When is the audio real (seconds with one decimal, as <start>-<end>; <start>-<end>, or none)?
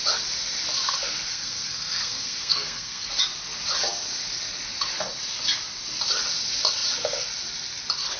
0.0-1.3; 3.1-8.2